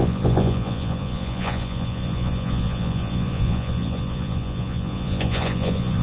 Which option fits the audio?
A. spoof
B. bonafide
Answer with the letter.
A